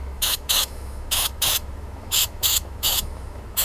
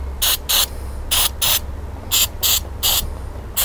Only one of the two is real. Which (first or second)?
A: second